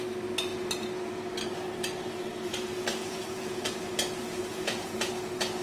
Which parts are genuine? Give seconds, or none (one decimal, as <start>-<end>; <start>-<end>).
0.0-2.9; 3.9-4.5; 5.1-5.6